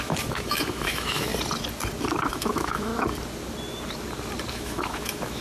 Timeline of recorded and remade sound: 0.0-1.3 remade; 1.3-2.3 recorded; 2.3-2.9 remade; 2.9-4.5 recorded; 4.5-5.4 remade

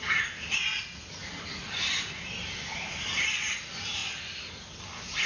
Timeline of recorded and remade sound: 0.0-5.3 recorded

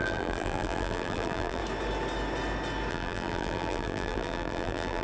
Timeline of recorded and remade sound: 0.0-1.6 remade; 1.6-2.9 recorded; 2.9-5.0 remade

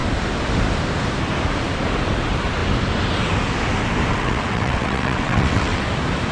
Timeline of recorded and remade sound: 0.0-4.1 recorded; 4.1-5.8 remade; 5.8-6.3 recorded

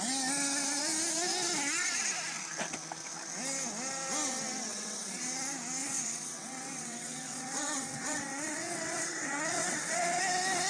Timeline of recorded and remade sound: 0.0-4.7 recorded; 4.7-5.2 remade; 5.2-5.8 recorded; 5.8-10.2 remade; 10.2-10.7 recorded

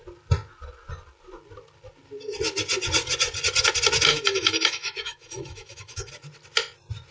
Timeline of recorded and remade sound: 0.0-4.1 recorded; 4.1-6.1 remade; 6.1-7.1 recorded

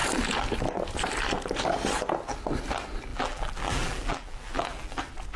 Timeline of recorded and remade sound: 0.0-3.1 recorded; 3.1-5.0 remade; 5.0-5.4 recorded

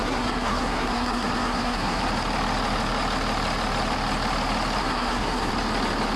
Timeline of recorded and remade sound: 0.0-2.0 remade; 2.0-4.8 recorded; 4.8-5.5 remade; 5.5-6.2 recorded